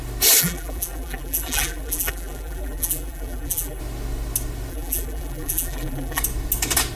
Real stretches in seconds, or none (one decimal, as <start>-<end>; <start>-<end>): 0.0-0.4; 3.8-4.7; 6.2-6.9